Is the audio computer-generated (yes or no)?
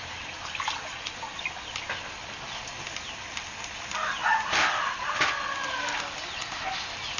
no